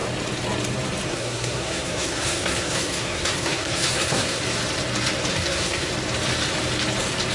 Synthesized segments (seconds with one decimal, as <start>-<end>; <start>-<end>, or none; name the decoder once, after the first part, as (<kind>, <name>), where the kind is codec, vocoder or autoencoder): 1.1-4.4 (codec, SNAC); 5.3-5.9